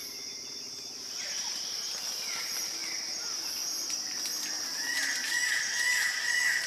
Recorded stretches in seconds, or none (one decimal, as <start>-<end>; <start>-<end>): 1.9-6.7